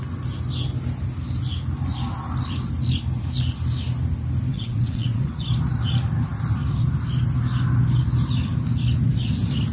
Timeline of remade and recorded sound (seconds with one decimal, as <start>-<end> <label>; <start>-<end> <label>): 0.0-4.5 recorded; 4.5-5.4 remade; 5.4-9.7 recorded